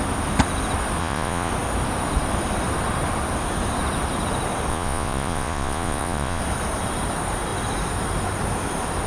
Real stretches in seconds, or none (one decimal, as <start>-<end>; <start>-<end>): 0.0-1.0; 1.5-4.7; 6.4-9.1